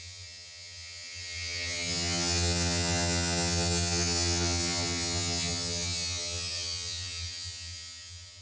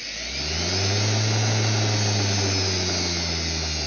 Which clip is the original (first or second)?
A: second